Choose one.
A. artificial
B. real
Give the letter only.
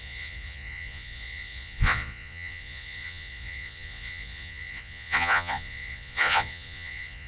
A